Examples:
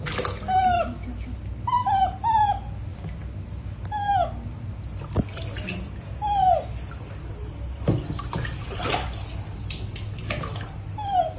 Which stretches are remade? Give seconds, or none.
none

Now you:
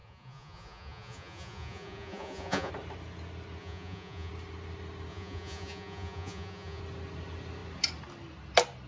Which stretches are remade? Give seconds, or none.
0.0-2.7 (vocoder, Vocos); 3.6-4.3; 5.1-6.8

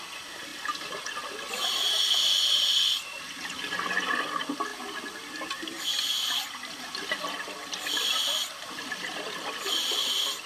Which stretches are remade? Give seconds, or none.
none

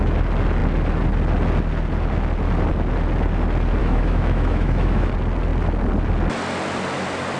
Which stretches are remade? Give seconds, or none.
3.8-5.1 (autoencoder, DAC-VAE)

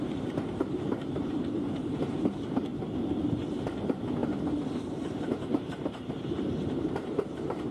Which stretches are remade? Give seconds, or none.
0.0-2.7 (vocoder, BigVGAN v2); 3.5-4.2; 4.8-7.7